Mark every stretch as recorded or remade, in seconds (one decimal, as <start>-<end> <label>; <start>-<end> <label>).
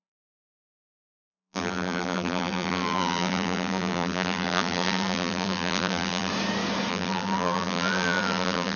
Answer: 0.0-6.3 remade; 6.3-6.9 recorded; 6.9-8.8 remade